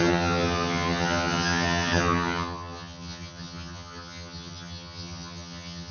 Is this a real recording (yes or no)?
no